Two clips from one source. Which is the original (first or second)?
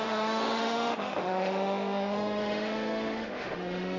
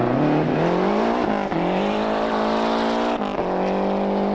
second